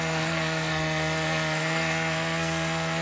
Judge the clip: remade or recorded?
remade